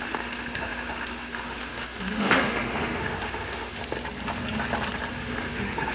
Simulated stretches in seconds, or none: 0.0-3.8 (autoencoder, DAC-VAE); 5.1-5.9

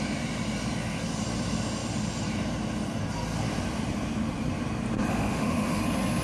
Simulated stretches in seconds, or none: 5.1-5.8 (autoencoder, DAC-VAE)